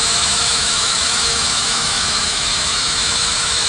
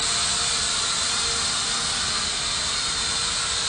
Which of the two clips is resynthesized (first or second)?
first